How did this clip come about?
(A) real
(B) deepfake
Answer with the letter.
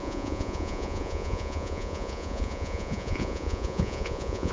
B